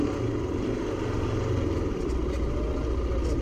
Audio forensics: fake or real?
real